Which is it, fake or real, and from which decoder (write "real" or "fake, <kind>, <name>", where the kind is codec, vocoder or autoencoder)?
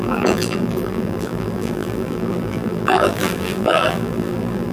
fake, vocoder, BigVGAN v2